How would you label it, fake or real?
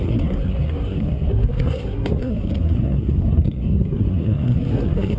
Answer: fake